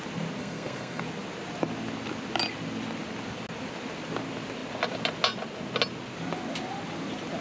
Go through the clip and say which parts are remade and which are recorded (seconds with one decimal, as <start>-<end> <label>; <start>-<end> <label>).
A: 0.0-0.4 recorded; 0.4-1.0 remade; 1.0-7.4 recorded